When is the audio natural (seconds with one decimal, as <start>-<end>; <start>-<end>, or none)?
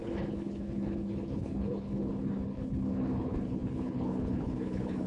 none